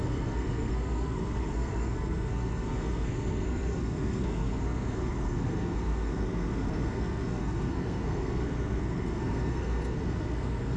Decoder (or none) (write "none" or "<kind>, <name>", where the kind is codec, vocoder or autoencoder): codec, SNAC